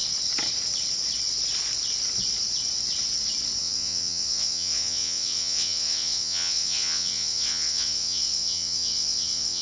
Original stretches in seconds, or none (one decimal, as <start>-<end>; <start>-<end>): 0.0-3.6